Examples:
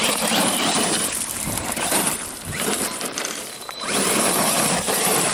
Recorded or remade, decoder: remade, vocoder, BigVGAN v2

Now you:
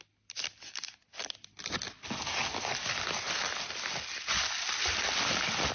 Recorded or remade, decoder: recorded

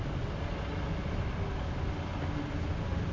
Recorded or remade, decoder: recorded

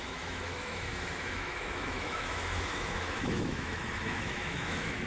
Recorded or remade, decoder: remade, autoencoder, DAC-VAE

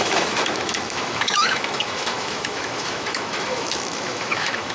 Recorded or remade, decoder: remade, autoencoder, DAC-VAE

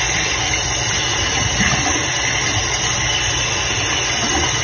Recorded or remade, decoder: recorded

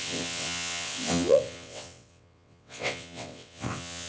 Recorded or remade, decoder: remade, vocoder, WaveNeXt